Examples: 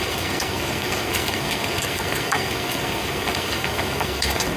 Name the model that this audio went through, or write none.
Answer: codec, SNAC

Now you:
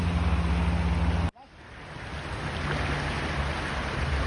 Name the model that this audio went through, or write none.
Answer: none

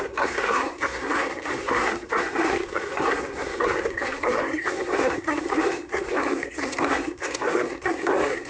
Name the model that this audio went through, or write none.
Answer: codec, SNAC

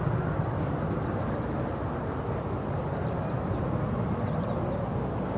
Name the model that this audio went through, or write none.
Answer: none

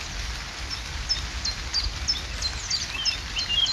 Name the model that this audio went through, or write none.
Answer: none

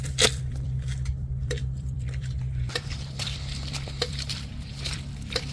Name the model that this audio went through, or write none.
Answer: vocoder, BigVGAN v2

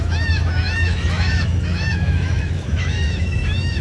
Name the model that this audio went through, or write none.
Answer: autoencoder, DAC-VAE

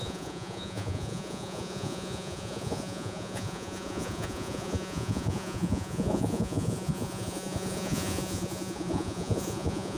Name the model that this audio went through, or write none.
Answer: vocoder, Vocos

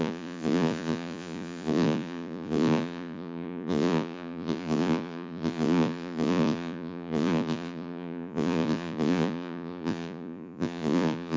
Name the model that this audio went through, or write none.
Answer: vocoder, Vocos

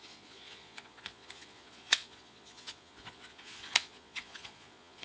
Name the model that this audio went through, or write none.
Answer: vocoder, Vocos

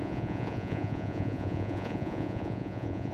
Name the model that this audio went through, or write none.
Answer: vocoder, Vocos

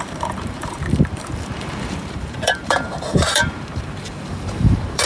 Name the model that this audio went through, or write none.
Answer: vocoder, BigVGAN v2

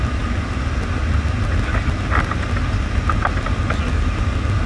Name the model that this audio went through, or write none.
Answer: none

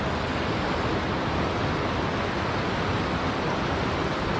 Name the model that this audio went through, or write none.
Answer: none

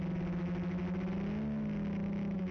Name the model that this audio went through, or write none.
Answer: none